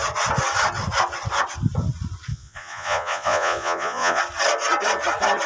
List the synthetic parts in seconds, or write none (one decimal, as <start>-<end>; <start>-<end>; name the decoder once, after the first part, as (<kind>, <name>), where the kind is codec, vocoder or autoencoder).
2.3-4.2 (vocoder, Vocos)